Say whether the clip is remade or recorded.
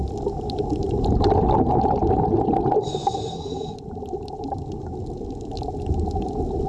recorded